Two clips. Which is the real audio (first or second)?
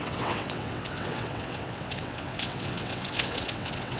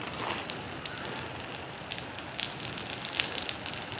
second